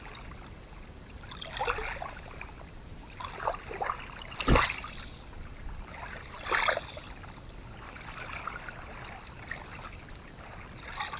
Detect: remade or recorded recorded